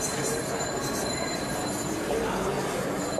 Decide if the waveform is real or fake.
fake